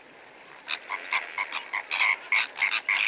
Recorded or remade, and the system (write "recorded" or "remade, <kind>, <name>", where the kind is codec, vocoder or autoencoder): remade, vocoder, BigVGAN v2